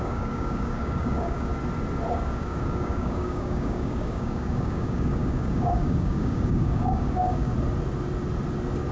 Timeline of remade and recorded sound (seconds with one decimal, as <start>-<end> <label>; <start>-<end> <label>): 0.0-1.5 remade; 1.5-2.1 recorded; 2.1-7.5 remade; 7.5-8.9 recorded